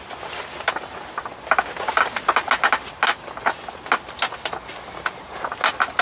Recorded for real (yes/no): yes